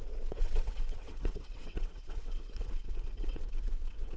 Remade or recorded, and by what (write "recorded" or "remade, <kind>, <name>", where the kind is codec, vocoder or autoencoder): remade, vocoder, WaveNeXt